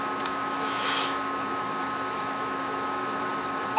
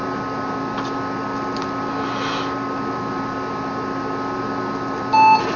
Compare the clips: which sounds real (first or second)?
second